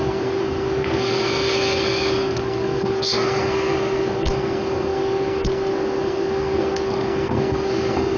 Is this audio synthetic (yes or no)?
yes